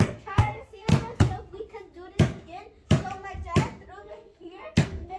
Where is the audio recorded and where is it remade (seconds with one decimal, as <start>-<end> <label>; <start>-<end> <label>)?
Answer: 0.0-0.9 remade; 0.9-4.0 recorded; 4.0-5.2 remade